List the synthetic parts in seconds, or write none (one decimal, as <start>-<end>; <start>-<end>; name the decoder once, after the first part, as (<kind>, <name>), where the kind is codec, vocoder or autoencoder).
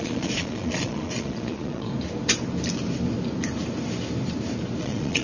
0.0-1.9 (vocoder, Vocos); 4.8-5.2